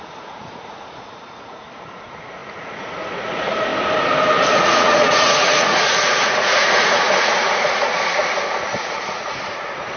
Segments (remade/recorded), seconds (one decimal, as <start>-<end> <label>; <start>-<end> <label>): 0.0-3.7 remade; 3.7-4.6 recorded; 4.6-8.2 remade; 8.2-8.8 recorded; 8.8-10.0 remade